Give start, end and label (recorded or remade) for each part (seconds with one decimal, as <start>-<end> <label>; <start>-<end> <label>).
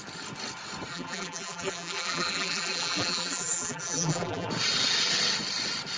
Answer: 0.0-0.9 recorded; 0.9-4.5 remade; 4.5-6.0 recorded